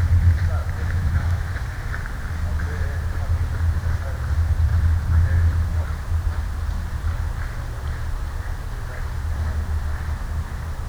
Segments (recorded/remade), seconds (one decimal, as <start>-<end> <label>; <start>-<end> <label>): 0.0-0.6 recorded; 0.6-1.5 remade; 1.5-10.9 recorded